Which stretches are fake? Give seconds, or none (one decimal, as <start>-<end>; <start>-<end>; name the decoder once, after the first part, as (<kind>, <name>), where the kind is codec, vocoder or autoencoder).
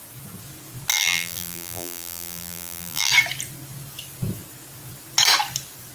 0.9-3.1 (vocoder, BigVGAN v2)